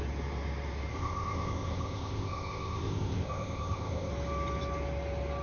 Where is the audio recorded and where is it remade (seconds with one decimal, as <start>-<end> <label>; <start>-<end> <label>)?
0.0-0.9 recorded; 0.9-4.1 remade; 4.1-5.4 recorded